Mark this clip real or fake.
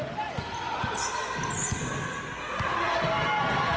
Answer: real